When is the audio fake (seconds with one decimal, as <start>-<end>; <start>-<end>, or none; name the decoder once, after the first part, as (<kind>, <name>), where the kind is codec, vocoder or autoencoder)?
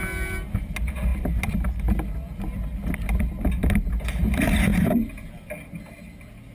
4.7-5.5 (vocoder, BigVGAN v2)